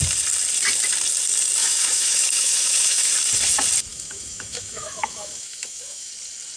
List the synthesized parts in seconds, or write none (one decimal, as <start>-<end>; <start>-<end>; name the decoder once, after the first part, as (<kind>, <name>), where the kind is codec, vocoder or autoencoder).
1.6-3.1 (autoencoder, DAC-VAE); 3.9-6.1